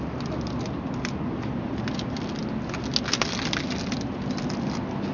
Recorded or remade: recorded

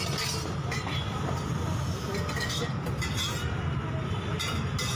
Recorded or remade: recorded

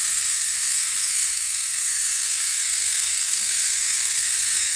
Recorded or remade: remade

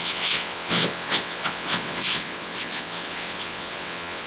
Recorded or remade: remade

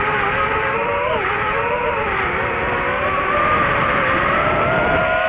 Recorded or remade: remade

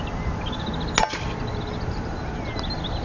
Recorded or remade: recorded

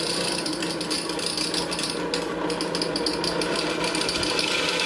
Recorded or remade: recorded